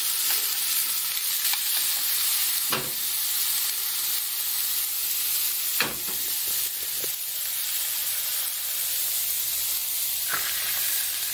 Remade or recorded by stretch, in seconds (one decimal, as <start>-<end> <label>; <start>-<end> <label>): 0.0-0.8 recorded; 0.8-1.7 remade; 1.7-11.3 recorded